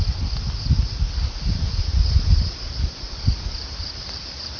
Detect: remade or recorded remade